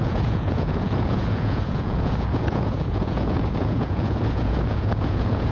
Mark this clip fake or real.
fake